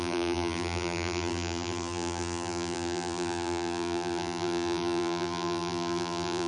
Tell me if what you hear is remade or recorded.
remade